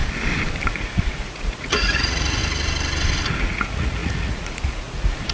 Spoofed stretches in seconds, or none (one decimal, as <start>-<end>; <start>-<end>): 0.7-2.4; 3.4-5.3